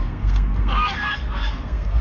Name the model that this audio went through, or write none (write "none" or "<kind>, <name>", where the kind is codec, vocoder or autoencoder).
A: codec, SNAC